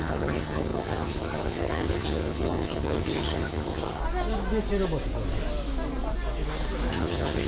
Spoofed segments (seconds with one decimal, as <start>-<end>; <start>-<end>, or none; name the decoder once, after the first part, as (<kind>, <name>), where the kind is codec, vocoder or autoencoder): 0.0-4.0 (vocoder, HiFi-GAN); 6.9-7.5